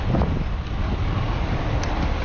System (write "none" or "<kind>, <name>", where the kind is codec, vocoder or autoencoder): none